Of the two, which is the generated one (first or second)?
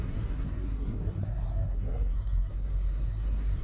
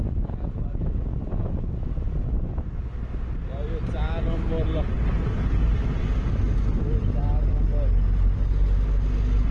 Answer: first